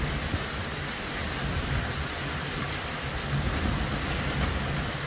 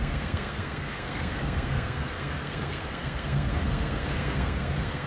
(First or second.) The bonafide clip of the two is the first